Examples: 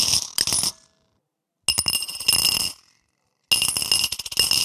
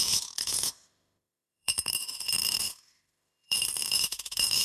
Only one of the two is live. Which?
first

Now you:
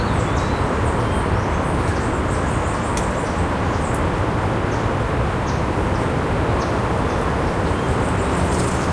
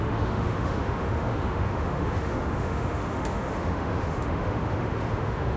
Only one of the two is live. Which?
first